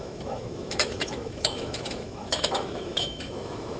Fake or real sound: fake